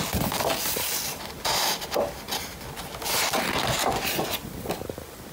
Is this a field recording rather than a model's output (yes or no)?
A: yes